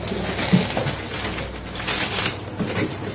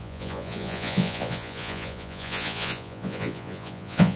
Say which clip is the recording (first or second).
first